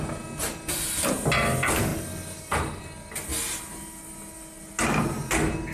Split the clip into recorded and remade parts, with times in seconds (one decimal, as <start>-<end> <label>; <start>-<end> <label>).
0.0-5.7 recorded